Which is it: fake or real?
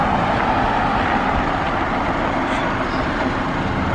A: real